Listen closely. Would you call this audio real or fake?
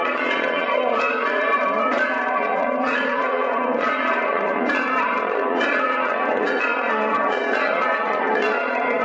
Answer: fake